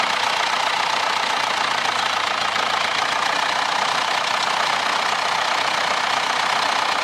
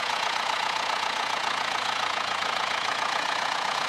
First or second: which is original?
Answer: first